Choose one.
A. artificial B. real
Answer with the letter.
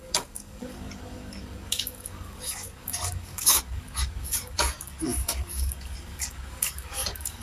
A